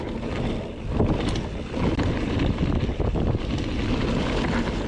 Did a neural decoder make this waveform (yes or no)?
no